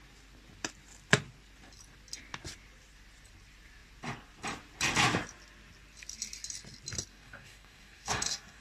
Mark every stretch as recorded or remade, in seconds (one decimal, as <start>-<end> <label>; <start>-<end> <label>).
0.0-7.1 recorded; 7.1-8.6 remade